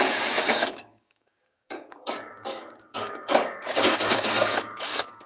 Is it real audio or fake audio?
fake